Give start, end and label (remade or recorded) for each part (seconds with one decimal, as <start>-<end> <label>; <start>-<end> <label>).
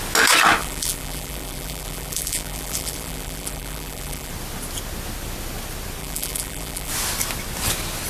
0.0-0.6 recorded; 0.6-4.3 remade; 4.3-6.0 recorded; 6.0-6.9 remade; 6.9-8.1 recorded